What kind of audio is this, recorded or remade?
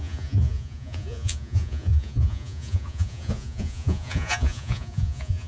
remade